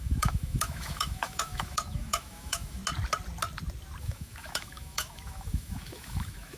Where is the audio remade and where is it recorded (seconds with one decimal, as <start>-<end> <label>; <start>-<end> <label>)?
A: 0.0-2.8 remade; 2.8-4.0 recorded; 4.0-6.6 remade